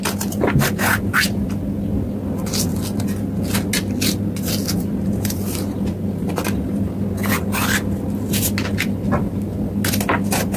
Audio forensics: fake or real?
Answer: real